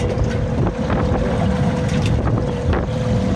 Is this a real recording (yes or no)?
yes